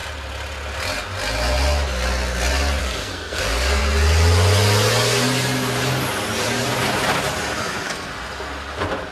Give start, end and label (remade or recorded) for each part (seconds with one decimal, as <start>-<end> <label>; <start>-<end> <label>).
0.0-2.8 recorded; 2.8-3.8 remade; 3.8-7.6 recorded; 7.6-8.1 remade; 8.1-9.1 recorded